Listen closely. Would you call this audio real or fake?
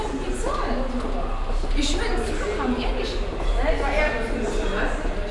real